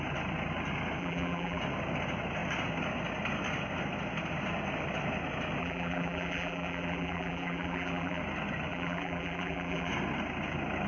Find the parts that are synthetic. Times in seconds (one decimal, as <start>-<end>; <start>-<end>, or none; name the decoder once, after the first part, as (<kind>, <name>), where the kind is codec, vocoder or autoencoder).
1.0-1.6 (vocoder, BigVGAN v2); 5.6-8.2; 8.7-9.9